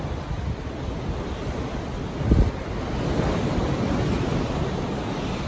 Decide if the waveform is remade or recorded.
recorded